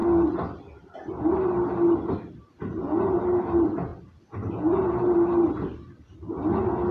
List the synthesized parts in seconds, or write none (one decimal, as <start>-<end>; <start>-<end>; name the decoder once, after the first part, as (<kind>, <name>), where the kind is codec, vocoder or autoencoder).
none

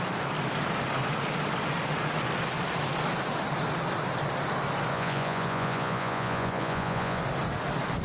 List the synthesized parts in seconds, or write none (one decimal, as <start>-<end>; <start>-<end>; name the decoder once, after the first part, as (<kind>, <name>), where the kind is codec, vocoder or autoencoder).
4.9-7.2 (vocoder, Vocos)